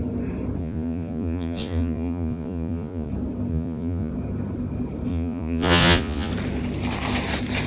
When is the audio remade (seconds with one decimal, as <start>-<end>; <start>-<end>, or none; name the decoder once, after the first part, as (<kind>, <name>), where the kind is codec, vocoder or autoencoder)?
0.6-3.1 (vocoder, Vocos); 3.5-4.1; 5.1-6.3

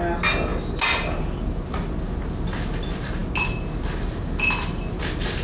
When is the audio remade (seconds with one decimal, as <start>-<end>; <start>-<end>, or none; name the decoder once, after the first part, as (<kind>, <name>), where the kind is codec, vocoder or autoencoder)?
none

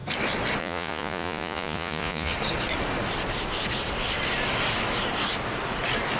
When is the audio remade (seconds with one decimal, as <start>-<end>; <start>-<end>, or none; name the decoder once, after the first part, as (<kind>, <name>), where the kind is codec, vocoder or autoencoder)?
0.6-2.3 (vocoder, Vocos)